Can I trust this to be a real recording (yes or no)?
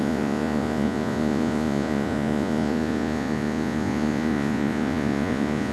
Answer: no